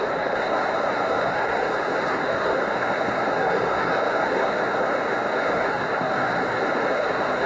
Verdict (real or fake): fake